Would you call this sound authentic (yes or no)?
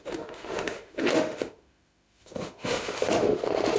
no